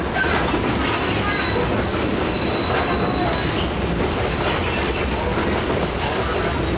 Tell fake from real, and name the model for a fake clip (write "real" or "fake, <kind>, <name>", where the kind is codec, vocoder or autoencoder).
real